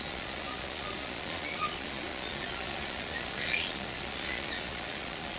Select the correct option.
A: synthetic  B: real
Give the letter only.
A